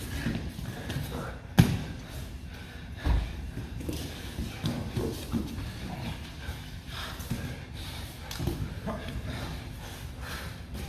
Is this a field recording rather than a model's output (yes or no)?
yes